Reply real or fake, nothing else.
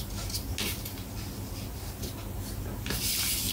real